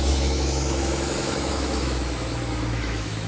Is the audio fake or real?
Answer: fake